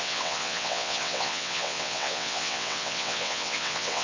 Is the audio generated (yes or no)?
yes